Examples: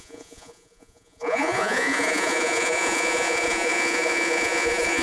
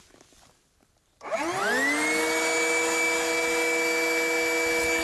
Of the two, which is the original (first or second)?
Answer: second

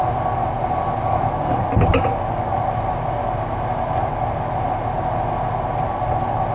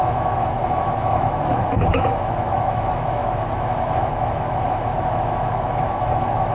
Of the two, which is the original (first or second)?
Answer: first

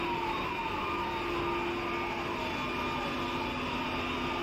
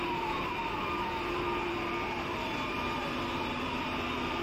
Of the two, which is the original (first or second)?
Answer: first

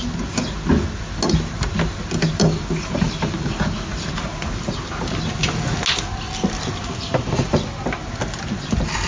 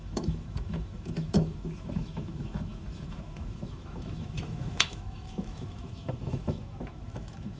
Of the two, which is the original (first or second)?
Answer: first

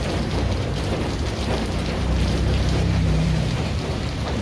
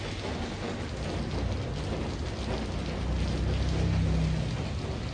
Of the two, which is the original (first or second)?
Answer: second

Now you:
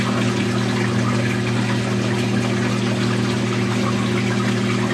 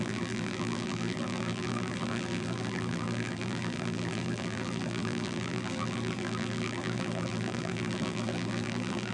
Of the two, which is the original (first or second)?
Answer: first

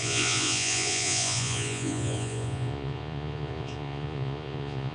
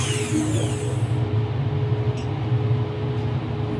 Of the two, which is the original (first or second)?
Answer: second